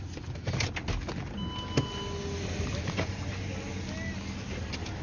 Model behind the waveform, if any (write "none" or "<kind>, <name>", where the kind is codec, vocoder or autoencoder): none